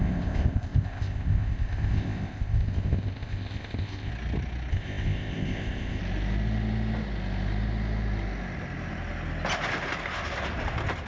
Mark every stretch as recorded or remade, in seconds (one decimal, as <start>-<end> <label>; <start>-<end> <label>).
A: 0.0-4.1 remade; 4.1-4.7 recorded; 4.7-6.0 remade; 6.0-11.1 recorded